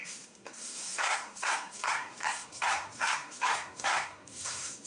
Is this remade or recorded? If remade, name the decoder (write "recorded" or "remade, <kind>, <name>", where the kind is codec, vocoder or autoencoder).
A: remade, codec, SNAC